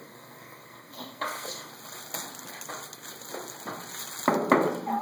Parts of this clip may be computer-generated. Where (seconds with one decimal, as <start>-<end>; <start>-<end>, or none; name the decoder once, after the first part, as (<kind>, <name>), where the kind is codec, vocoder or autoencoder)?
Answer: 0.0-1.7 (codec, SNAC)